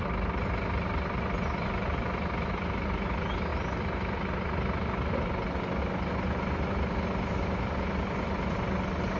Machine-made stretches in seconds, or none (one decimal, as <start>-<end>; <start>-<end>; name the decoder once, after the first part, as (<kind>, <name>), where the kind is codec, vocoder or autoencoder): none